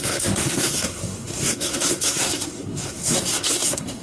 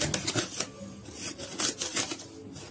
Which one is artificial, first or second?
first